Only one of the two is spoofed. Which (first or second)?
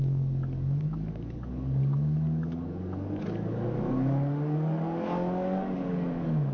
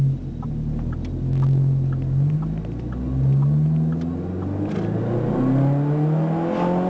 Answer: first